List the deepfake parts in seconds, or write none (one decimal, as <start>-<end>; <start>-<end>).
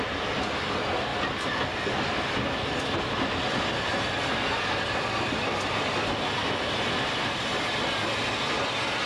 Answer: none